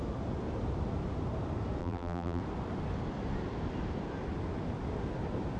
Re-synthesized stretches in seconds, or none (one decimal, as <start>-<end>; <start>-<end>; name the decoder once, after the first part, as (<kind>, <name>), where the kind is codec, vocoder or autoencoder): 1.8-2.4 (vocoder, BigVGAN v2)